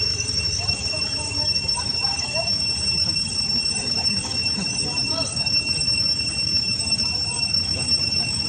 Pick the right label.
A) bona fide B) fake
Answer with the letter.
B